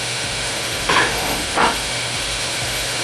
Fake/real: fake